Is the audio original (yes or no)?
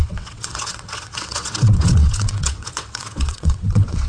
no